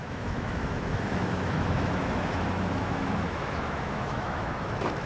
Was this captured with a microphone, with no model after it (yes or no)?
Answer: no